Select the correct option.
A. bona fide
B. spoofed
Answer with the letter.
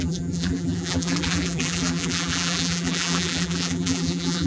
B